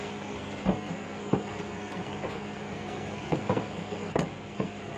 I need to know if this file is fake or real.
fake